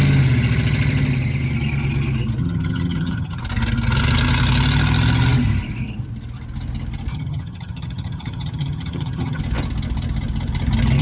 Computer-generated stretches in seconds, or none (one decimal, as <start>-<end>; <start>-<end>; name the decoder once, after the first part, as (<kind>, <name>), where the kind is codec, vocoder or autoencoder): 2.4-3.4 (vocoder, HiFi-GAN); 7.1-9.4